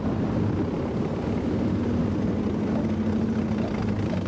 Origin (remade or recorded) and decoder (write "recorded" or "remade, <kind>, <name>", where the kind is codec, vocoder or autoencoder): recorded